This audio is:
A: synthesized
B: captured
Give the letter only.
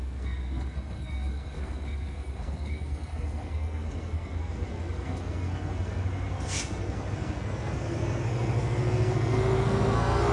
A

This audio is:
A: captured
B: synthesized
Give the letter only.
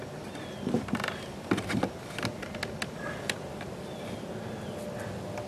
A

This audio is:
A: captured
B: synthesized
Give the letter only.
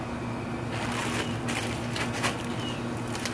A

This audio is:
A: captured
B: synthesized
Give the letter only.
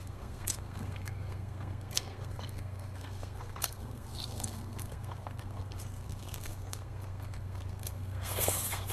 B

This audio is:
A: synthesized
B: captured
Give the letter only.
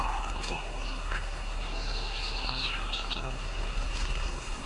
A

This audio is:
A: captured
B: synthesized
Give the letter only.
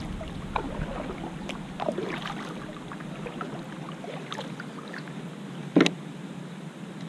A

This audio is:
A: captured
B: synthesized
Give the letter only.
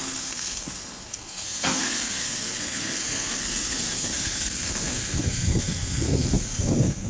B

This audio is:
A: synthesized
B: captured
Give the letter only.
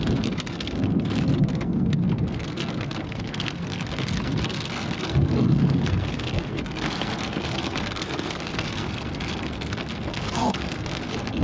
A